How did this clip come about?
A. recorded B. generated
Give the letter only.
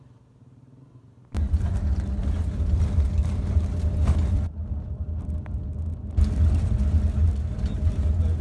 A